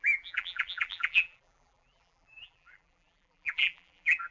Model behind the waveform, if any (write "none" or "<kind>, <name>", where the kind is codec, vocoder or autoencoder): vocoder, BigVGAN v2